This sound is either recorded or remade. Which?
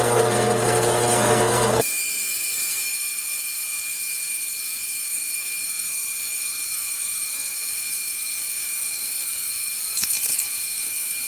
remade